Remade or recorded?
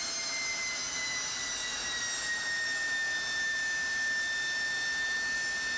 recorded